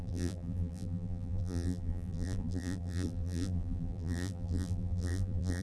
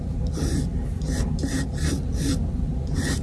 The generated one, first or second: first